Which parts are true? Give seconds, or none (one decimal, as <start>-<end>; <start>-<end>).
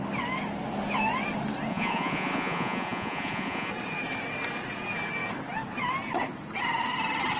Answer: 0.0-1.7; 3.7-7.4